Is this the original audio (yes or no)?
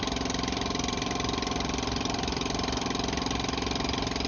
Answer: yes